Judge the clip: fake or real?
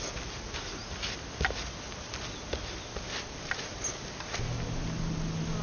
real